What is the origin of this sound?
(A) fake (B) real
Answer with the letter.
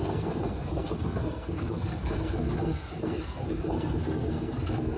A